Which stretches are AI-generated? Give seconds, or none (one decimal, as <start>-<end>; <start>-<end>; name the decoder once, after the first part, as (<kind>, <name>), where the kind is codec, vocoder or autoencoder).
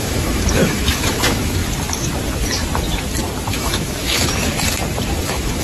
0.0-1.6 (autoencoder, DAC-VAE); 3.5-4.5; 5.1-5.6